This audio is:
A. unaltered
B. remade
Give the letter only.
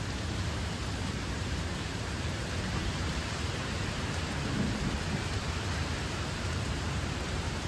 B